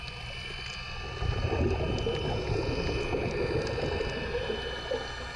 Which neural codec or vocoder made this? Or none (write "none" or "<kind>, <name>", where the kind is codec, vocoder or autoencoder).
none